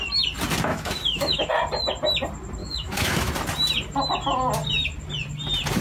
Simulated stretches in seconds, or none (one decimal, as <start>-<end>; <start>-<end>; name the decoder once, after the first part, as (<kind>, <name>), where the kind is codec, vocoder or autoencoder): 0.7-1.5 (autoencoder, DAC-VAE); 2.6-3.3